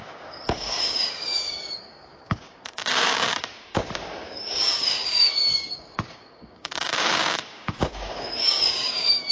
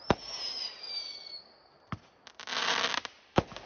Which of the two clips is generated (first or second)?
first